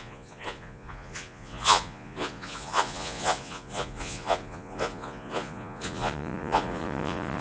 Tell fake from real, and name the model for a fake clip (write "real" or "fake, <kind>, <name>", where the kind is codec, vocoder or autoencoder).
fake, vocoder, Vocos